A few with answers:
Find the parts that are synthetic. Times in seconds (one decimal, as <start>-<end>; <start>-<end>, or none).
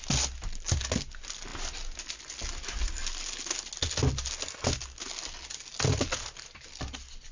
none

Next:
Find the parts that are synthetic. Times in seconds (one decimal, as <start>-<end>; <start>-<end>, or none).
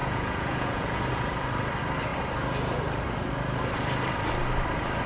0.0-1.0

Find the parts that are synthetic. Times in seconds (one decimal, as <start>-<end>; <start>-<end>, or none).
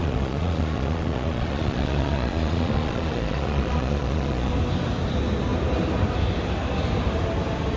0.0-4.5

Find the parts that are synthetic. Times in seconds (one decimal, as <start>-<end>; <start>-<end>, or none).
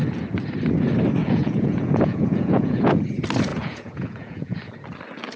1.2-3.0; 3.5-4.6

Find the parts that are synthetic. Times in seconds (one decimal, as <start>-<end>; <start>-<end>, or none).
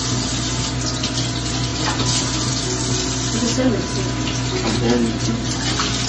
none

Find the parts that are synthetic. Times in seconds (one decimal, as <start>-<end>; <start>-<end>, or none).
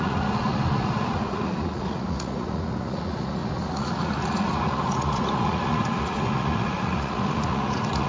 0.0-8.1